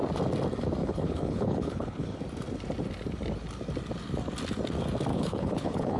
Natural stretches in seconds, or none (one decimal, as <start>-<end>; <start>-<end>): 0.0-0.8; 2.2-5.1